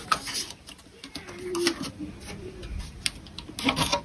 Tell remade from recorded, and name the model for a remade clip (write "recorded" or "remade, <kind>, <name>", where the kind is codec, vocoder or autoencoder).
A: recorded